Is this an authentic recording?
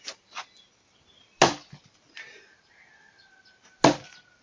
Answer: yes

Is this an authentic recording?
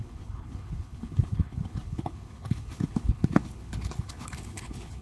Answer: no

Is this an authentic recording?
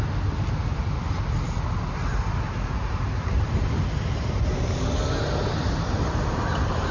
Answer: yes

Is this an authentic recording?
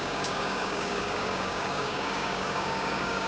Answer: no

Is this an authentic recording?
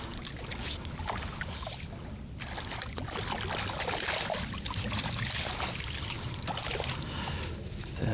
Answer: yes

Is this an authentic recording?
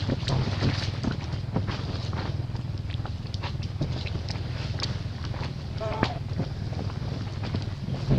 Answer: yes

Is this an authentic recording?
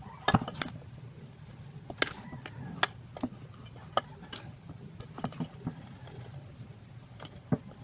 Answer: yes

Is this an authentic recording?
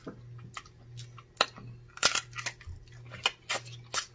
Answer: yes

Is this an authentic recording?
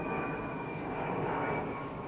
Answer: no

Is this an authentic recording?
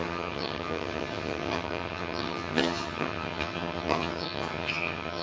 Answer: no